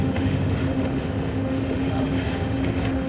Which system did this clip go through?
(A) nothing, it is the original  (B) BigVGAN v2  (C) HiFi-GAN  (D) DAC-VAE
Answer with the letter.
D